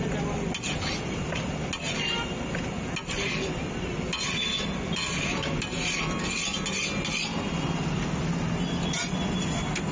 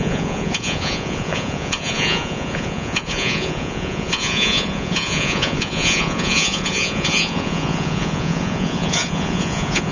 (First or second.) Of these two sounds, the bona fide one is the first